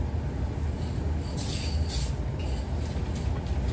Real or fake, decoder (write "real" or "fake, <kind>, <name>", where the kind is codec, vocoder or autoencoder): real